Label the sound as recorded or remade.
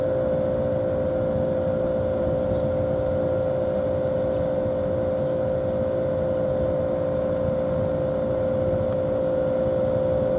recorded